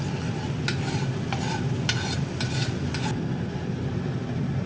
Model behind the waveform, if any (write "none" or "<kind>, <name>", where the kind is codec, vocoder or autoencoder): none